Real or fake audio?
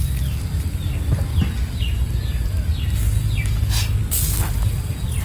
real